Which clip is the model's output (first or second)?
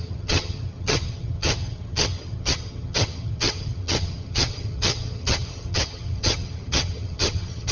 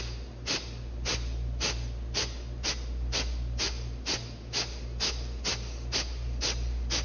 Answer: first